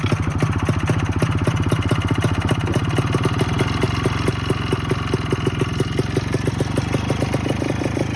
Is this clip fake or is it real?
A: real